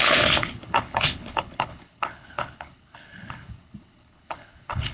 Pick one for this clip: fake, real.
fake